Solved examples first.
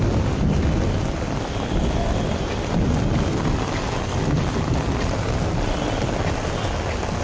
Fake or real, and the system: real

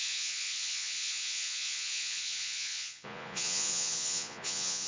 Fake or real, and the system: fake, vocoder, Vocos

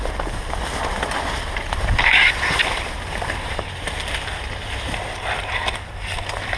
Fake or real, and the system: real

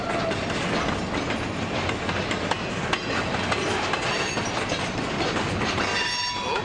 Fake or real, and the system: real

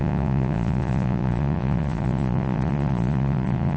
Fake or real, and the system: fake, vocoder, Vocos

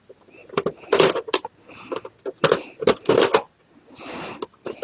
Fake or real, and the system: real